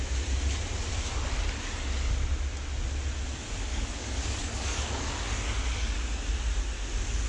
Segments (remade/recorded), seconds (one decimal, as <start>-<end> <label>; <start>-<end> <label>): 0.0-3.7 recorded; 3.7-5.1 remade; 5.1-7.3 recorded